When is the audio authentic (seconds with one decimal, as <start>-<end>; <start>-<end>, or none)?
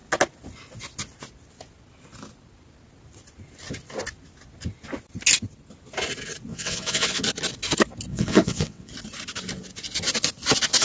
0.0-6.5; 7.2-8.1; 8.9-10.8